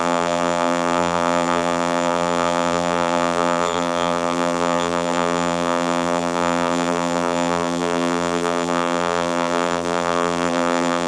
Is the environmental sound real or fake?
fake